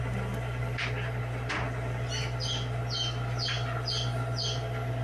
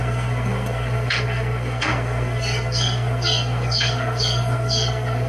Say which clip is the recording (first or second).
first